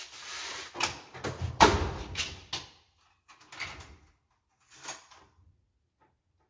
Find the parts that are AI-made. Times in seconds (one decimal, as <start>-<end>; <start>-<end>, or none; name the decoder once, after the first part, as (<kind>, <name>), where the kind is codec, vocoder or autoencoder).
none